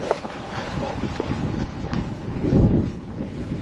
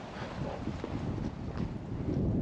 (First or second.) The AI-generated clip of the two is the first